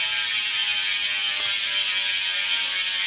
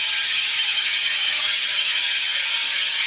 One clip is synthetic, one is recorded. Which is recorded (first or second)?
first